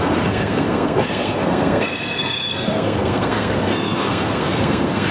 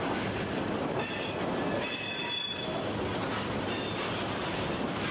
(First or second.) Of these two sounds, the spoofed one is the first